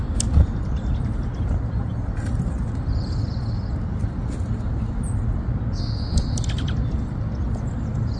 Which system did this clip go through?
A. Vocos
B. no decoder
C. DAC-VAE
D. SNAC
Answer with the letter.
B